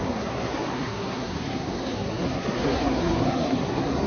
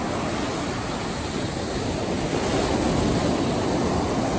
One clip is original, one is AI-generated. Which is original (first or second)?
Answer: second